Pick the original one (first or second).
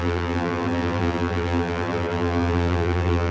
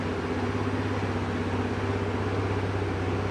second